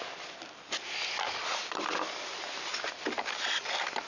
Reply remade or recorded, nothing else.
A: recorded